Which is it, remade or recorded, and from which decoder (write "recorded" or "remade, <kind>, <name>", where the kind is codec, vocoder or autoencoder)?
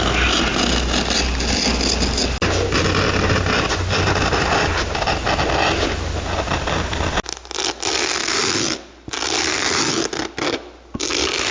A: recorded